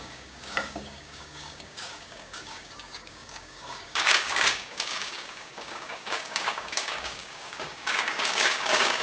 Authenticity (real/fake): fake